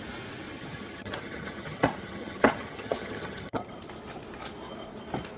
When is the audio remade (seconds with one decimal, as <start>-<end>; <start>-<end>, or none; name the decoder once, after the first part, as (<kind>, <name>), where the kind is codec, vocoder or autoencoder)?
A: 0.5-3.7 (vocoder, HiFi-GAN)